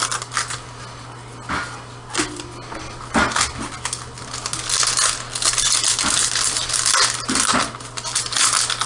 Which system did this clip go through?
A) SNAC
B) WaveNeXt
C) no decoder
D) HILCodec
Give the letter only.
C